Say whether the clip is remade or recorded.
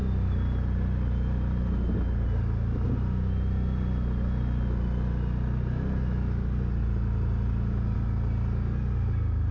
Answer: recorded